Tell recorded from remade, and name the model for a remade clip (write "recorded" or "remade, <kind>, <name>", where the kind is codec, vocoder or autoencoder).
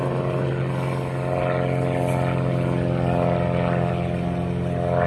recorded